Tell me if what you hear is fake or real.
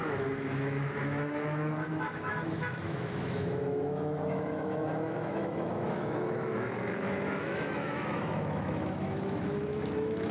fake